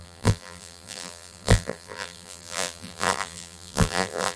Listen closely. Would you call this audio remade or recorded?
remade